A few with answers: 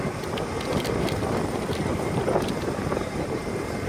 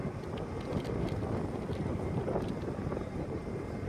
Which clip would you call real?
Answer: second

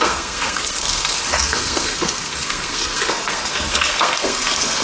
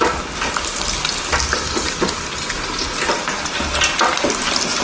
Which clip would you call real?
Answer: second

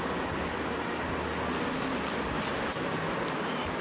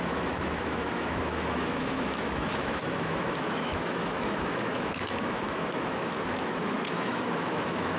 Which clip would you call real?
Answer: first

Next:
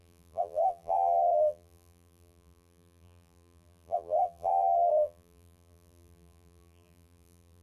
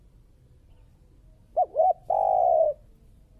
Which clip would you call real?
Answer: second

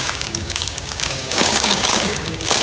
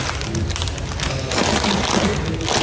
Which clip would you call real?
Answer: second